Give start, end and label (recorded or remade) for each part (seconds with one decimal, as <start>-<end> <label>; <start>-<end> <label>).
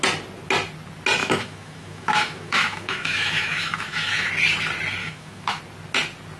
0.0-1.2 recorded; 1.2-4.3 remade; 4.3-5.0 recorded; 5.0-5.6 remade; 5.6-6.4 recorded